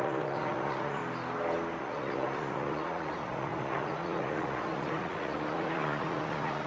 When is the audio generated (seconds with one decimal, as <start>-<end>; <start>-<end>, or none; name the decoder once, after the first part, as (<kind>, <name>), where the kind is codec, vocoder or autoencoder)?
0.0-1.0 (vocoder, Vocos); 1.8-6.7